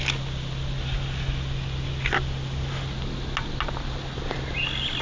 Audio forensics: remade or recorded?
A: recorded